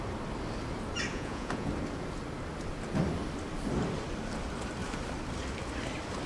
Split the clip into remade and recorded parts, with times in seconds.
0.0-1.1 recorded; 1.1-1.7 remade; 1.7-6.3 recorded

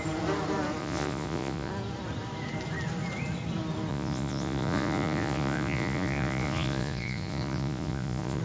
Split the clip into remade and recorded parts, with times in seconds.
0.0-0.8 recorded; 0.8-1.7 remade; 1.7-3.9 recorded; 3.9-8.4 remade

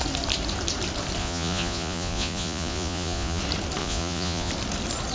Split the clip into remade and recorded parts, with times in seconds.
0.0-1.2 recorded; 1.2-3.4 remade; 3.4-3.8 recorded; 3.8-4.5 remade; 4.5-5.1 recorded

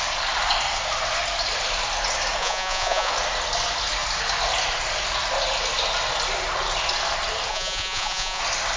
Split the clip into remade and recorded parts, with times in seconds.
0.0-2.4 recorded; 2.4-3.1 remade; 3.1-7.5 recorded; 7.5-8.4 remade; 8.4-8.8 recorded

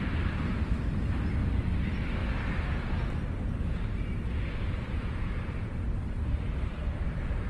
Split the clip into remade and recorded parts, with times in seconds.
0.0-7.5 recorded